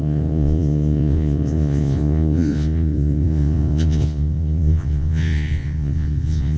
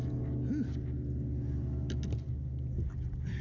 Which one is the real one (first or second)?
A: second